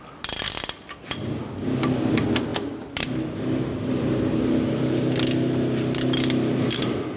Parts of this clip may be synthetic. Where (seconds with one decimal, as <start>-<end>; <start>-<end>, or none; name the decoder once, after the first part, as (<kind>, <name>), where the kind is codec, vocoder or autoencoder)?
none